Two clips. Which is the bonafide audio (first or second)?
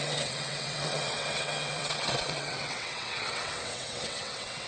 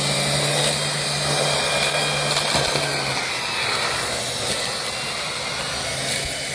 second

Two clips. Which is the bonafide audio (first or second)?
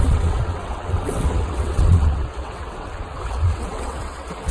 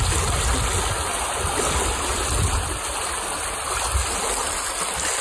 second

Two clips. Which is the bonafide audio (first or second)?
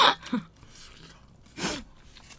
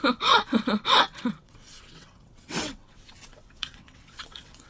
first